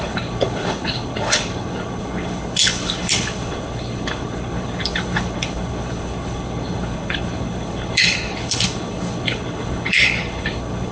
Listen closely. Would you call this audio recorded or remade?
remade